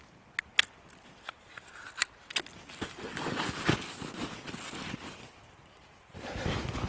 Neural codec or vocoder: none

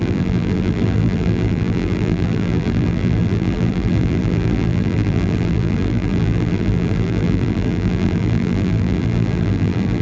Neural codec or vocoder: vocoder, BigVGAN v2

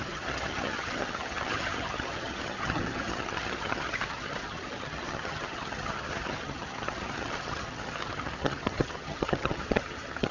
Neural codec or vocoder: vocoder, HiFi-GAN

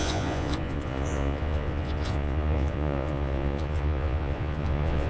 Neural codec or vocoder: vocoder, Vocos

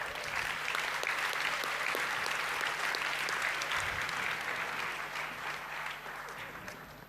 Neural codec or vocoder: none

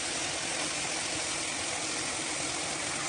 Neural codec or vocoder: none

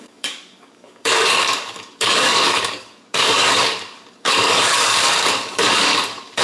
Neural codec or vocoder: codec, DAC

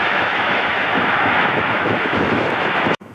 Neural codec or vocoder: autoencoder, DAC-VAE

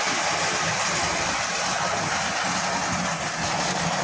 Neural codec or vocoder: none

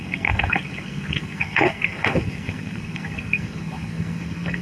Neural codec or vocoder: codec, SNAC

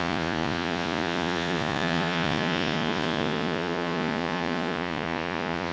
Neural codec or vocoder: vocoder, Vocos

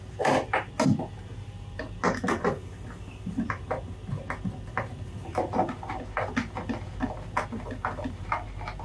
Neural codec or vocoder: none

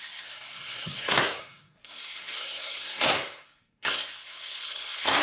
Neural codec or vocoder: codec, SNAC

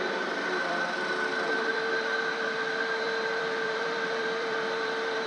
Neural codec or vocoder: vocoder, BigVGAN v2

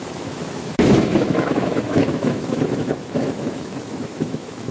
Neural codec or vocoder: autoencoder, DAC-VAE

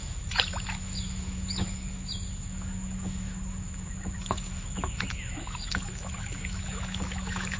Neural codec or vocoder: autoencoder, DAC-VAE